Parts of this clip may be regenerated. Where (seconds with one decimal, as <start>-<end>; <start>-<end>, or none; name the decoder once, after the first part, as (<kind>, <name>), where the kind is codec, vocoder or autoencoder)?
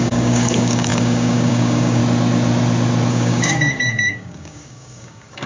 0.0-2.0 (codec, DAC); 3.1-5.5